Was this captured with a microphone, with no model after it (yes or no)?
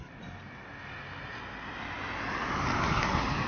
yes